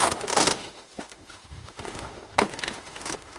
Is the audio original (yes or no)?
no